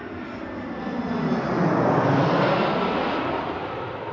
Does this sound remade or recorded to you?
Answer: recorded